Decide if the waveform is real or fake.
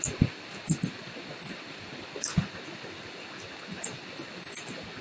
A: real